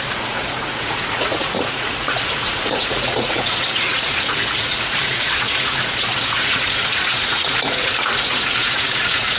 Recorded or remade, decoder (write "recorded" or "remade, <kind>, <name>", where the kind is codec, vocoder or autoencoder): remade, vocoder, Vocos